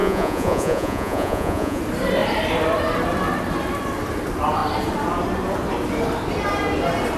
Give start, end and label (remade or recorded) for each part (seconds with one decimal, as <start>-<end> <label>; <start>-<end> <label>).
0.0-1.8 remade; 1.8-7.2 recorded